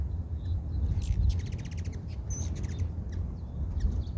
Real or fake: real